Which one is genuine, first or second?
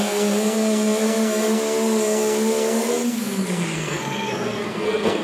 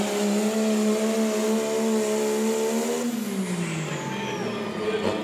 second